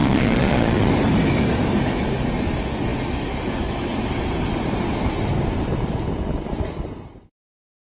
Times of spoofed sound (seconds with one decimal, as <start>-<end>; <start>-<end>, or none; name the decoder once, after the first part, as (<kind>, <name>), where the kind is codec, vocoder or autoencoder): 0.0-0.9 (vocoder, Vocos)